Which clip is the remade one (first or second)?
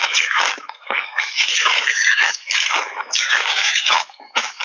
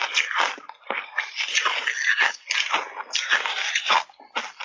first